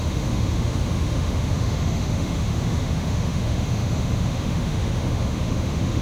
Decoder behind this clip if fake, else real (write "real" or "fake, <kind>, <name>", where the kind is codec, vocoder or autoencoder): fake, autoencoder, DAC-VAE